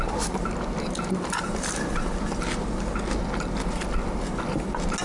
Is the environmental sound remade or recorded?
recorded